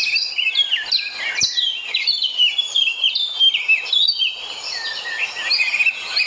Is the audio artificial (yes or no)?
no